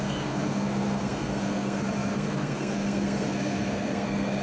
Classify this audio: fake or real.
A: fake